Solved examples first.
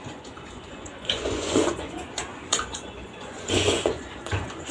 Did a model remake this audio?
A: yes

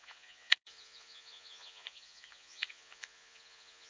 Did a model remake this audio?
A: yes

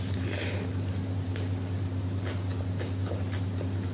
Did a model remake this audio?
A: no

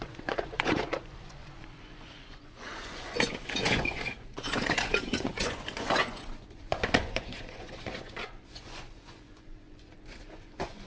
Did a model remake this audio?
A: yes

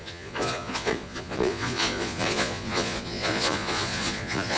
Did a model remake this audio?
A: yes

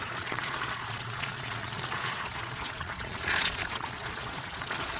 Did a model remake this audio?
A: yes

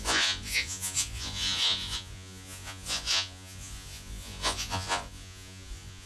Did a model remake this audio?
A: yes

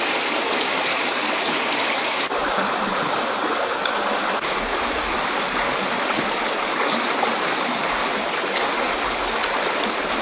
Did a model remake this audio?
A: no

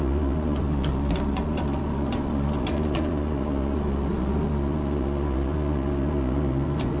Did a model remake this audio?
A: yes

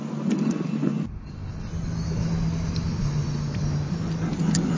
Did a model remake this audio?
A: no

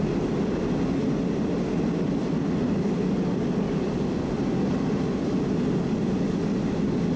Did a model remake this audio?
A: no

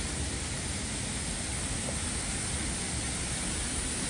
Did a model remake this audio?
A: no